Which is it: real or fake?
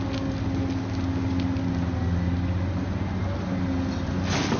real